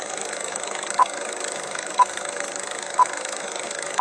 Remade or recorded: remade